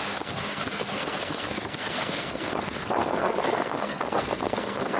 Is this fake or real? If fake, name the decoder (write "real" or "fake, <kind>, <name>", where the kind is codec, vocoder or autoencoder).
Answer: fake, codec, SNAC